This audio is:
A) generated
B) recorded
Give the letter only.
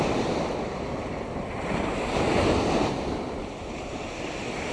A